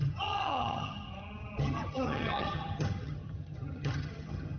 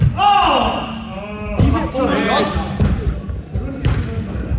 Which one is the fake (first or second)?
first